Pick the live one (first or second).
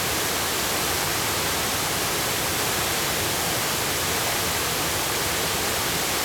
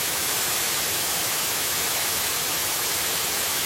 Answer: first